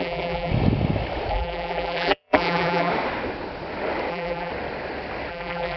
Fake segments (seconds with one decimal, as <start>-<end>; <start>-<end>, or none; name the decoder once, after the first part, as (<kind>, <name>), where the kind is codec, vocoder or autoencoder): 0.0-0.5 (vocoder, BigVGAN v2); 1.3-2.9; 4.1-4.5; 5.3-5.8